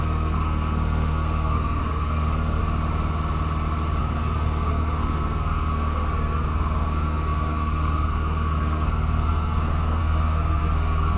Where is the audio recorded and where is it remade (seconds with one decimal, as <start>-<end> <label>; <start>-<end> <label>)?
0.0-2.6 remade; 2.6-4.0 recorded; 4.0-11.2 remade

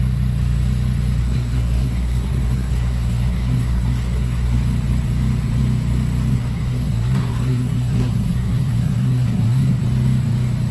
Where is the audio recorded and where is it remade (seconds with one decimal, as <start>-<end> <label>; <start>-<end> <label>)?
0.0-1.2 recorded; 1.2-4.6 remade; 4.6-6.3 recorded; 6.3-9.8 remade; 9.8-10.7 recorded

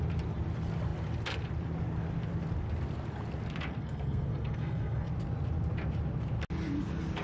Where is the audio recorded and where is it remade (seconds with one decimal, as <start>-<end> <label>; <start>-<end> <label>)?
0.0-3.7 recorded; 3.7-5.1 remade; 5.1-7.2 recorded

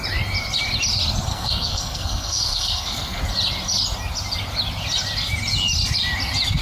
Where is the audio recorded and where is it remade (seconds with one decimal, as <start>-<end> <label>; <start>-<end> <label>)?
0.0-1.3 recorded; 1.3-3.2 remade; 3.2-6.6 recorded